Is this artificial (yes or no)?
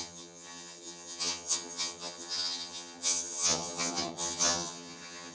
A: yes